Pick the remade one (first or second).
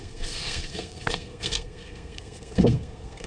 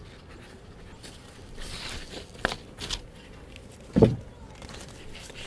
first